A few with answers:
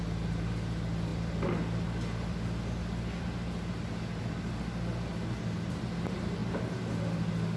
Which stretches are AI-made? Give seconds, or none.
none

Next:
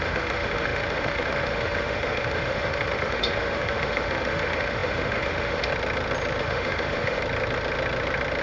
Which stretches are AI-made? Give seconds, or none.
0.0-5.7 (autoencoder, DAC-VAE); 6.4-7.2

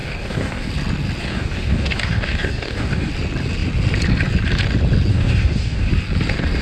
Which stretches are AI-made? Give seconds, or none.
0.0-0.7 (codec, DAC); 1.2-3.1; 5.1-5.9

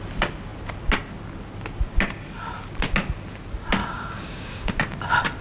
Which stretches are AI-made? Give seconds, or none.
3.8-4.7 (codec, DAC)

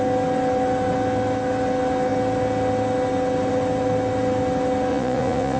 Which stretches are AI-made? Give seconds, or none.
4.9-5.6 (vocoder, Vocos)

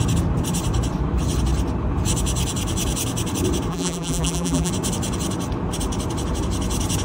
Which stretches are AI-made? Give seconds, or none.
3.7-4.7 (vocoder, BigVGAN v2)